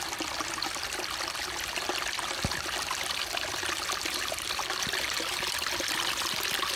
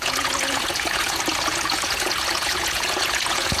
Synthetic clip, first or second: second